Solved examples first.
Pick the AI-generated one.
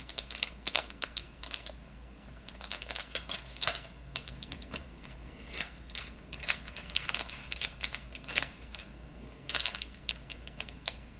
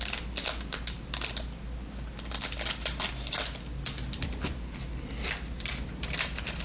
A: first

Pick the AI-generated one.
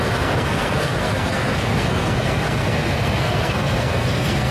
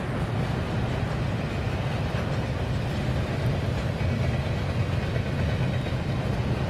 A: first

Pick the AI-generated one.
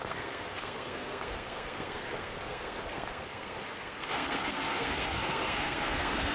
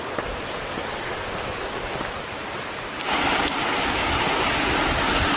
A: first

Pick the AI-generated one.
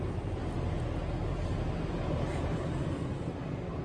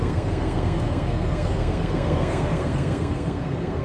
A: second